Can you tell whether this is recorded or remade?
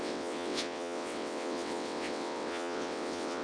remade